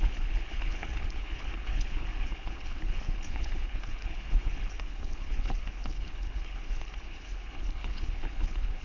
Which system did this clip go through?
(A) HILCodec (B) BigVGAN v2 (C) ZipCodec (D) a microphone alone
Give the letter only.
A